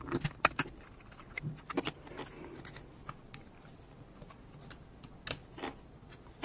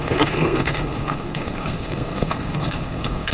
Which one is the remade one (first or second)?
second